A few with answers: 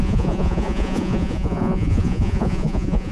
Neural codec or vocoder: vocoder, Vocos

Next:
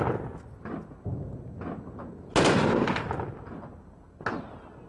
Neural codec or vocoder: none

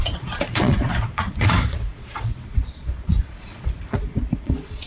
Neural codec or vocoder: vocoder, Vocos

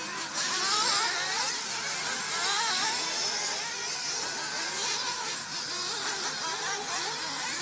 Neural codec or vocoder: none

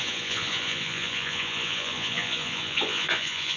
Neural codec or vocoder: vocoder, Vocos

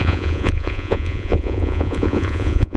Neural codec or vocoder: vocoder, Vocos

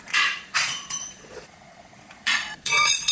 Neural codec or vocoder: vocoder, Vocos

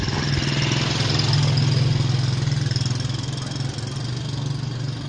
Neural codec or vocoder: none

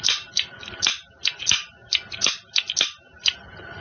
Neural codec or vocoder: none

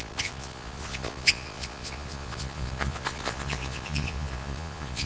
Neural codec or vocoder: vocoder, Vocos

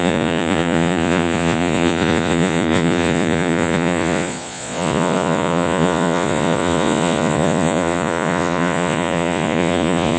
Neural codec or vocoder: vocoder, Vocos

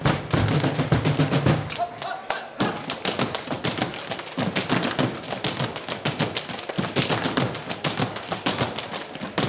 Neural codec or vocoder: none